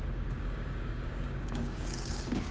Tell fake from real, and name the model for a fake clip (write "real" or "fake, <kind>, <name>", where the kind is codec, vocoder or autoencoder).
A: fake, codec, DAC